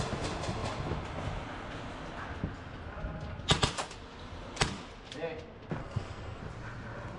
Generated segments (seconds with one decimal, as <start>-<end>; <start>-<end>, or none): 5.8-6.4

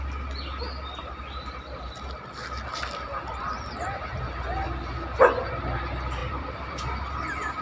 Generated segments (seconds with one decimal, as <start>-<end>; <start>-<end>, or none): 6.2-6.7

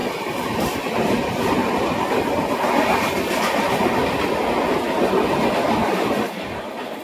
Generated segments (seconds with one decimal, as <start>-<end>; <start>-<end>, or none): 0.0-1.6; 5.5-7.0